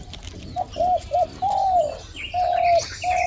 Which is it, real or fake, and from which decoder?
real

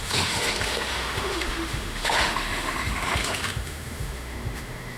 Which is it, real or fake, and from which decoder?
fake, autoencoder, DAC-VAE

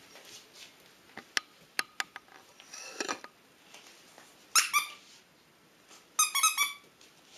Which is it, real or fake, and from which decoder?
real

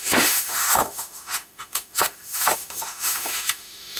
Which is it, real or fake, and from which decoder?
fake, autoencoder, DAC-VAE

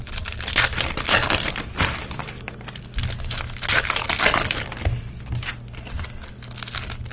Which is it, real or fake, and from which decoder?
real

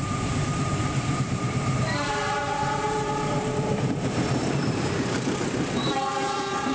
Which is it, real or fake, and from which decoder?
fake, vocoder, BigVGAN v2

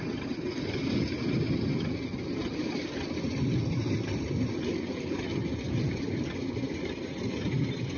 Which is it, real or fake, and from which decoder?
real